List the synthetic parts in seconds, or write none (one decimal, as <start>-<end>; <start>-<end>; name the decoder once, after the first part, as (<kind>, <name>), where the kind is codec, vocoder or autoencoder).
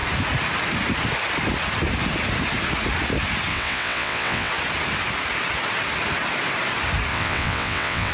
3.5-4.5 (vocoder, WaveNeXt); 7.1-8.1